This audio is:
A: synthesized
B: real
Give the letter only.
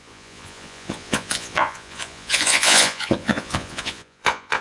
A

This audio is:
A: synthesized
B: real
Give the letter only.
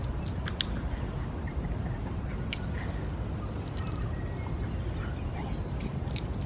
B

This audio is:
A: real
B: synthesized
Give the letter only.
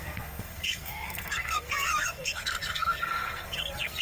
B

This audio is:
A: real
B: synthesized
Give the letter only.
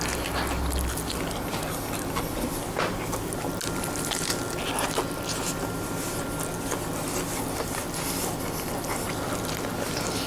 A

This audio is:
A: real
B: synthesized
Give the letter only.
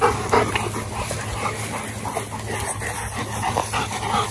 A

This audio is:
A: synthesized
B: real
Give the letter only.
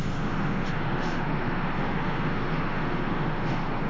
A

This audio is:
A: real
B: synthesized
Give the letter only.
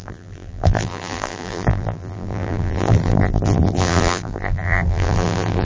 B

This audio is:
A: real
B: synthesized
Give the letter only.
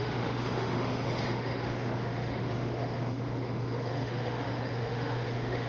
B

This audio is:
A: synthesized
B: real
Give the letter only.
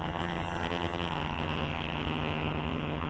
A